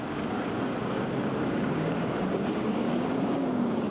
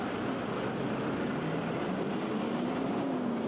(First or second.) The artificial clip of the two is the first